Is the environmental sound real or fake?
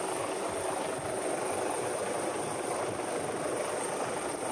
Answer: real